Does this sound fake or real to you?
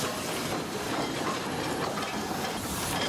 fake